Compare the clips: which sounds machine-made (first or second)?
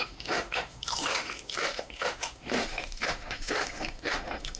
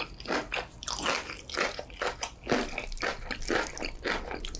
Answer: first